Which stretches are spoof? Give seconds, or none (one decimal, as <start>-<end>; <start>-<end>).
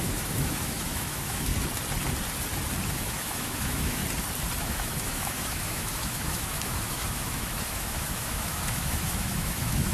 0.0-1.5; 2.9-4.0; 4.6-9.9